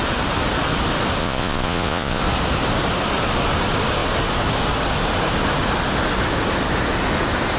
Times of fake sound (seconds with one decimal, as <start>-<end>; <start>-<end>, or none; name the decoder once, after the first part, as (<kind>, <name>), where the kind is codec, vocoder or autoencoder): 1.2-2.2 (vocoder, Vocos)

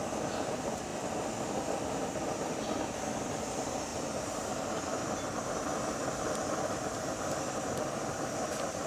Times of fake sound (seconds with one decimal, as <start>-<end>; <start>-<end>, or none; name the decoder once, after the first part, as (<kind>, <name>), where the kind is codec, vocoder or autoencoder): 0.0-0.9 (vocoder, BigVGAN v2); 1.5-3.9; 7.8-8.9

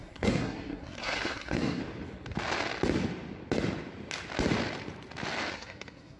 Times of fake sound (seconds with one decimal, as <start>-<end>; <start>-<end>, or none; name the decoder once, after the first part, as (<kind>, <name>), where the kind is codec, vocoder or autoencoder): 0.0-1.8 (codec, SNAC); 5.5-6.2

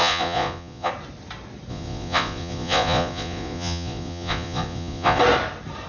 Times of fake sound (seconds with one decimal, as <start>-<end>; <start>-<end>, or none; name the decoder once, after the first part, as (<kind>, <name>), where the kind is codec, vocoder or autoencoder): 0.0-0.9 (vocoder, Vocos); 1.7-5.2

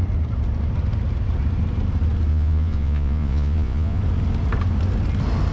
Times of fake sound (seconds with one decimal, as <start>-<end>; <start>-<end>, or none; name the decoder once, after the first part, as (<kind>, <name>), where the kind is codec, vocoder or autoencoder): 2.3-4.0 (vocoder, Vocos)